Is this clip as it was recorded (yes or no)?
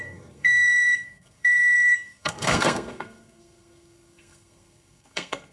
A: no